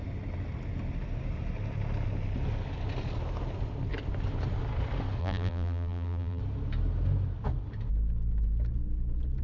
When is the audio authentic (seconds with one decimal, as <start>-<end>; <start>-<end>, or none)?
0.0-5.2; 6.4-9.4